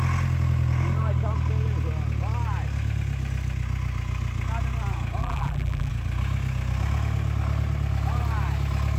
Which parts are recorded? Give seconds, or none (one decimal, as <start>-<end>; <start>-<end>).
0.0-5.2; 5.9-9.0